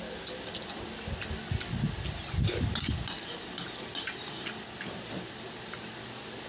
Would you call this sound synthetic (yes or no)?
no